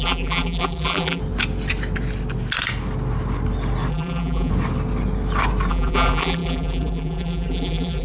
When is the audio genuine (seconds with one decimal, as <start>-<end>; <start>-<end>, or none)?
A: 1.2-3.9; 4.5-5.7